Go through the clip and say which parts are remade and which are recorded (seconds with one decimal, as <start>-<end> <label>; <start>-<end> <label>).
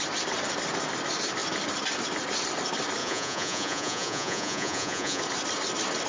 0.0-3.0 recorded; 3.0-5.2 remade; 5.2-6.1 recorded